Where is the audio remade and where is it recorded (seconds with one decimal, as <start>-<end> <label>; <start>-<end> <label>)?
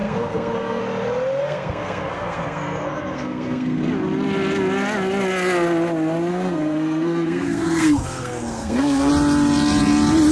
0.0-0.8 remade; 0.8-1.4 recorded; 1.4-3.9 remade; 3.9-6.3 recorded; 6.3-9.1 remade; 9.1-10.3 recorded